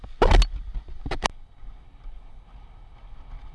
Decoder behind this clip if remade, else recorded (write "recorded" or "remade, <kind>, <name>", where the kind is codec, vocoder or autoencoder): recorded